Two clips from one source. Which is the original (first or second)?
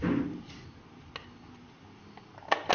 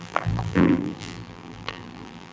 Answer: first